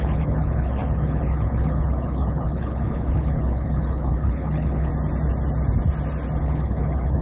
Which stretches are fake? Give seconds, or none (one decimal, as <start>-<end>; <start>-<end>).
0.0-4.9; 6.4-7.2